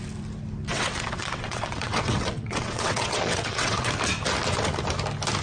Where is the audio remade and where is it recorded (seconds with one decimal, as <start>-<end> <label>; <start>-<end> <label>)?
0.0-0.7 recorded; 0.7-3.9 remade; 3.9-5.4 recorded